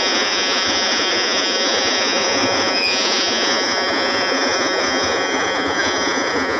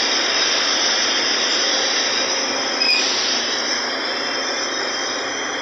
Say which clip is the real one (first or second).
second